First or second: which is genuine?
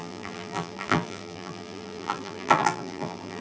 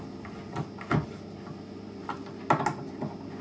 second